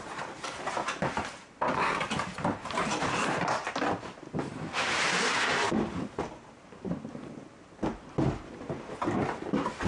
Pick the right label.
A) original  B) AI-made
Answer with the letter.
B